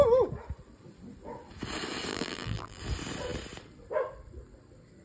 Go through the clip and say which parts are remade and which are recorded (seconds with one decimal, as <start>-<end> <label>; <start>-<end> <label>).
0.0-2.1 recorded; 2.1-2.8 remade; 2.8-5.0 recorded